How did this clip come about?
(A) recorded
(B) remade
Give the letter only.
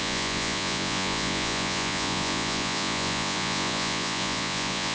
B